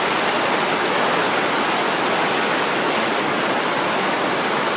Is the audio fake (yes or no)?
no